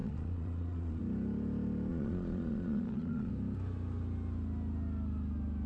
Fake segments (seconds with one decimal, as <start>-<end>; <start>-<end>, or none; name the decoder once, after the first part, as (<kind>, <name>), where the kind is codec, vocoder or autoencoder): 0.0-1.0 (vocoder, Vocos); 1.9-3.3